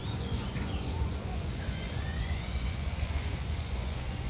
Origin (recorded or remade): remade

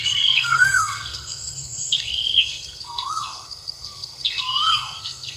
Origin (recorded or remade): remade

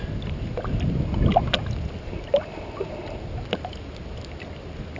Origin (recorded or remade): recorded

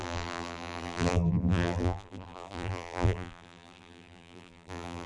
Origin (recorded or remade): remade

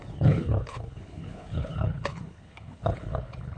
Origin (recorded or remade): remade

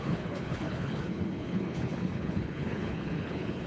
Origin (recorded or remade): remade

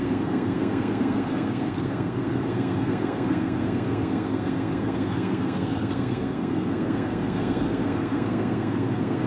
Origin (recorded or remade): remade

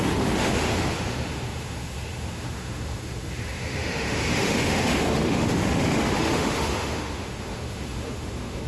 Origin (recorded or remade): remade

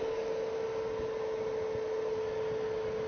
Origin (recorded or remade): recorded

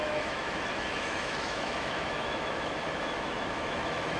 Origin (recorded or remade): remade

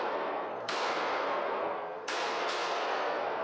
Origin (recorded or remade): remade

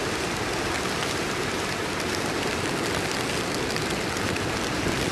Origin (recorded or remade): recorded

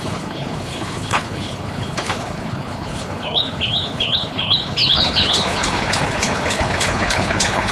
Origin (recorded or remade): remade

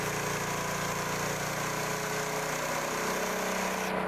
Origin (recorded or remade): recorded